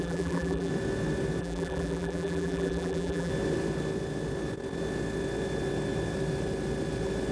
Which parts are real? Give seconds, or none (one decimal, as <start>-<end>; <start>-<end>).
0.7-1.4; 3.3-7.3